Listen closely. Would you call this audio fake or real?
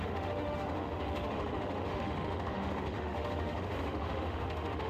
fake